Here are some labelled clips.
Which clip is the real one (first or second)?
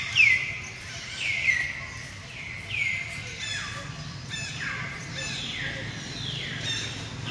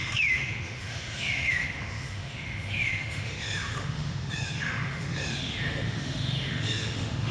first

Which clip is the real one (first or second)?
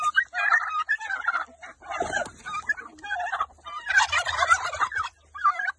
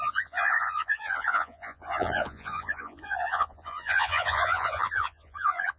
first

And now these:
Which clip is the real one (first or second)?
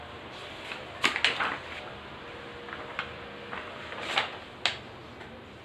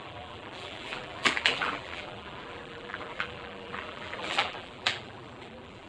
first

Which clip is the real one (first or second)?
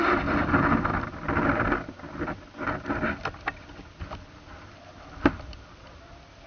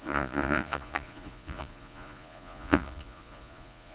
first